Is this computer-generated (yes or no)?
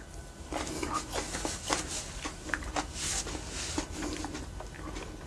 no